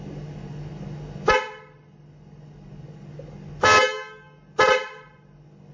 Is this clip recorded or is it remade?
recorded